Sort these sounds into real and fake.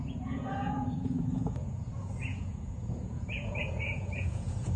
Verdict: fake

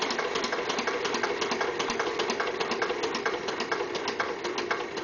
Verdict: real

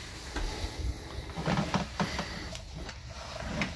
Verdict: real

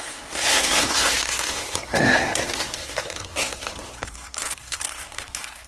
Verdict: fake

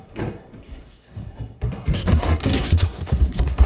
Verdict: fake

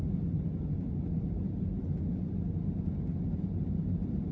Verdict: real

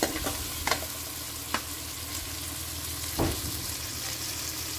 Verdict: real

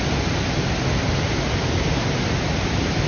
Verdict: real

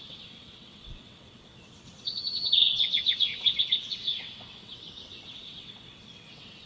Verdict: fake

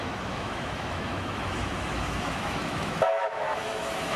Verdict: fake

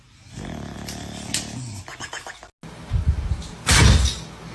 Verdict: real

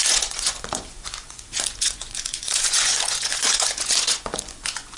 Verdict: fake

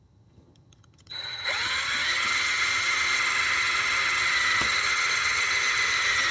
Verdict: fake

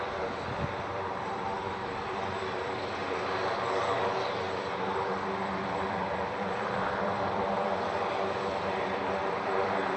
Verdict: fake